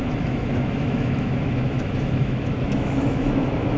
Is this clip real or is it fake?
fake